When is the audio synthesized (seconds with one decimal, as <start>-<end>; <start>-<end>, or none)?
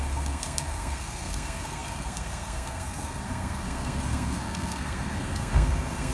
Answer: 0.0-6.1